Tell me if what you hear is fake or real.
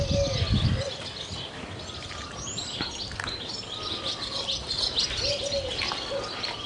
real